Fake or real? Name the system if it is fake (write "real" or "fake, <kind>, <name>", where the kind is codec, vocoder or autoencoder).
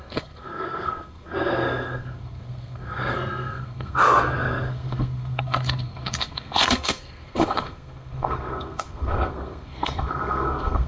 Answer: fake, codec, SNAC